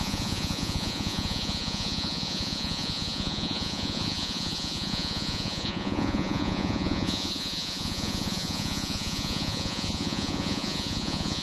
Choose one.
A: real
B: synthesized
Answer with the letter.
B